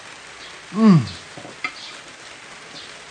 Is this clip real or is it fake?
real